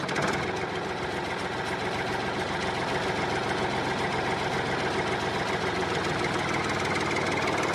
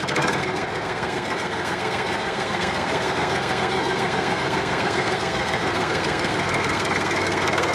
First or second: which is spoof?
second